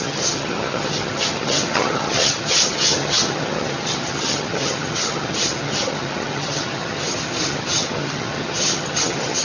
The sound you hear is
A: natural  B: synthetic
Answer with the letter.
B